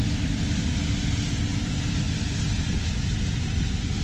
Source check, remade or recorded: recorded